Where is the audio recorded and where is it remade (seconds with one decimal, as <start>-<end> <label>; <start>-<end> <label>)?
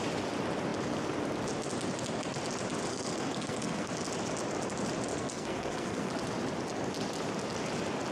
0.0-2.9 recorded; 2.9-3.9 remade; 3.9-5.1 recorded; 5.1-6.1 remade; 6.1-8.1 recorded